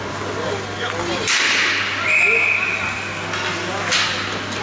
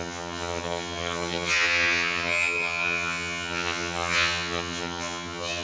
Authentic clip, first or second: first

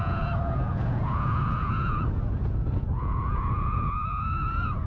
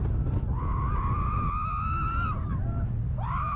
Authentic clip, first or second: second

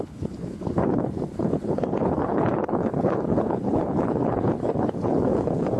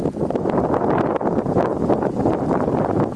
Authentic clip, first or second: second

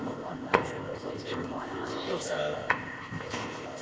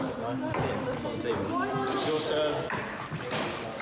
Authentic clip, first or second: second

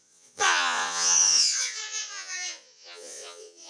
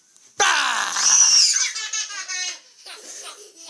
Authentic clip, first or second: second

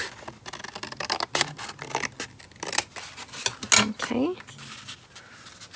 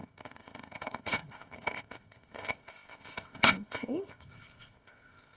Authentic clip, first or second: first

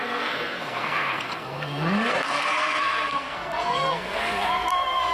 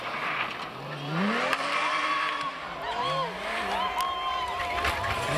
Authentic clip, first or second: second